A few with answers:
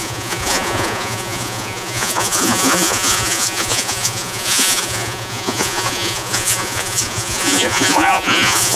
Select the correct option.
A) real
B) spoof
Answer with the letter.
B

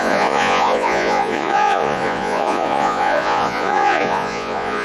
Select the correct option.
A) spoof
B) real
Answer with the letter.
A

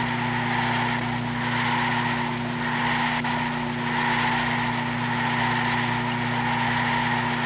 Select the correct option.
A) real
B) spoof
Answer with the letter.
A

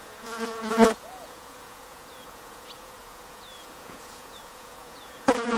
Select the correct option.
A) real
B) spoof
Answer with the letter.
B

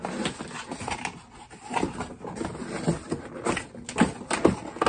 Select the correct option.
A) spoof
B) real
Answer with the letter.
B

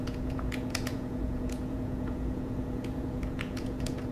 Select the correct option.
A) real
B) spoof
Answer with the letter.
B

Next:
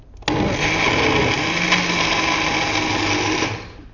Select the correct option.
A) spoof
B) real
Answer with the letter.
B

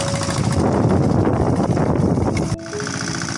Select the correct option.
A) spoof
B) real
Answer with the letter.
B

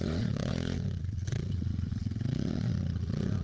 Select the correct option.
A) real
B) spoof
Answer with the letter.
B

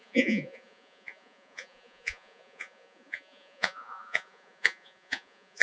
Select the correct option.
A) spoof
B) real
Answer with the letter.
A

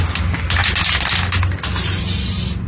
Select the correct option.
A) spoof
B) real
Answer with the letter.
B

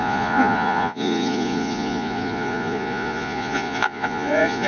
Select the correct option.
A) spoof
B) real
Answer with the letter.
A